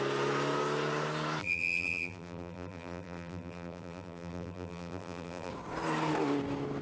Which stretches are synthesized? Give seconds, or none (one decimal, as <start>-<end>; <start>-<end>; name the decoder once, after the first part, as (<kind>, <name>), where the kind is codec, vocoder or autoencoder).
1.4-5.5 (vocoder, BigVGAN v2)